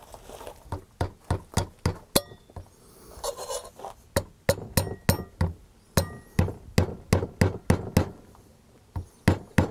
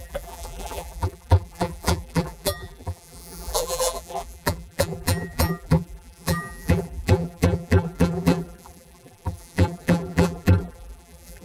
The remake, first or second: second